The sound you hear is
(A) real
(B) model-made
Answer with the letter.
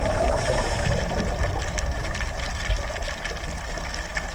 A